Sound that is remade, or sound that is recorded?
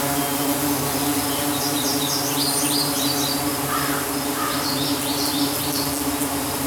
recorded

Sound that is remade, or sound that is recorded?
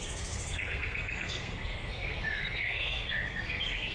remade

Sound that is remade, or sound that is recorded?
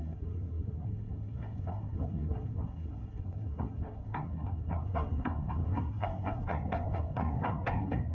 remade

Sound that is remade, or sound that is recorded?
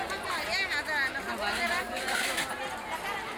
recorded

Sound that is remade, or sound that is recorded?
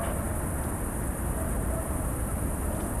recorded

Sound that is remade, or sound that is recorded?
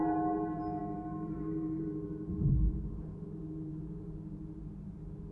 remade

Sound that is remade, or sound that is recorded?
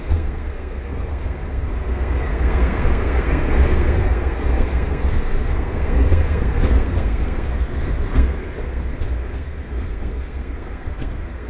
remade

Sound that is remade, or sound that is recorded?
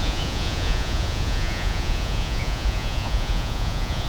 remade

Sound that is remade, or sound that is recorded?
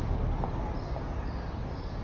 recorded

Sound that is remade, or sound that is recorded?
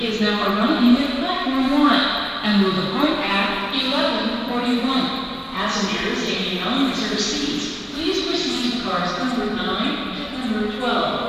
recorded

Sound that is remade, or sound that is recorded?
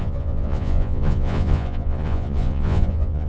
remade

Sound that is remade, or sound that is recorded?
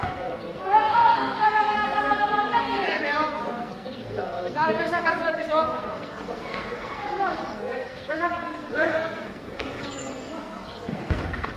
remade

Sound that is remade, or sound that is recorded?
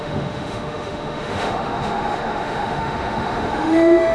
remade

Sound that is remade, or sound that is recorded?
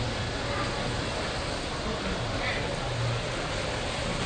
recorded